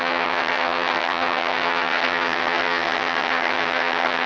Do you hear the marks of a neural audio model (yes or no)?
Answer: yes